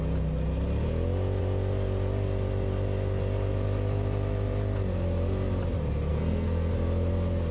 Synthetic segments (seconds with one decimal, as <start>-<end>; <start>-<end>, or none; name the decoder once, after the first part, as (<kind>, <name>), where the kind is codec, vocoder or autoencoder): 6.1-6.7 (codec, SNAC)

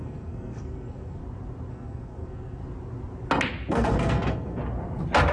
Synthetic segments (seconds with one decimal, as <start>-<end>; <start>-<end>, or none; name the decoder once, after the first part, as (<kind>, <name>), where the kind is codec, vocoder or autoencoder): 0.0-1.2 (codec, SNAC); 1.7-2.6; 3.7-4.6

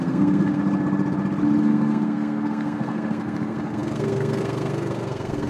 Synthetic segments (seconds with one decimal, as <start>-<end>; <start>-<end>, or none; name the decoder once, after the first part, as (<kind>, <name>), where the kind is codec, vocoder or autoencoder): 0.0-0.6 (codec, SNAC); 1.6-5.5

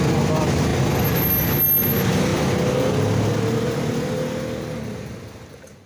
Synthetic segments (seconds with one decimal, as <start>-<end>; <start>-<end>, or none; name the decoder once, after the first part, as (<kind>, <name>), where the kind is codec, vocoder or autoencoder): none